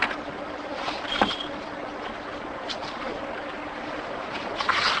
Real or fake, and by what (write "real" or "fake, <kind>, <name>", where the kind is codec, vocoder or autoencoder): real